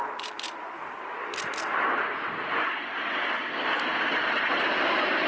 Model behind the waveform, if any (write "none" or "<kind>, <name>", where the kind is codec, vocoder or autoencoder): none